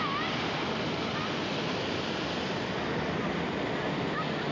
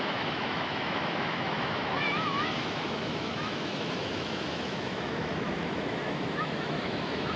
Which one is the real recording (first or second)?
first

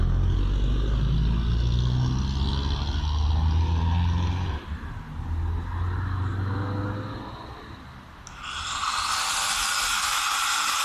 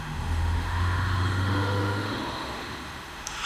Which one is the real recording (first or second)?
first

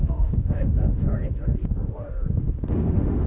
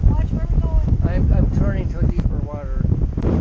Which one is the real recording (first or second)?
second